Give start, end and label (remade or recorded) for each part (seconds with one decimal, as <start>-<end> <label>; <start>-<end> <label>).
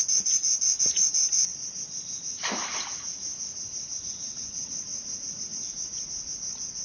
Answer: 0.0-0.8 recorded; 0.8-1.4 remade; 1.4-2.5 recorded; 2.5-6.8 remade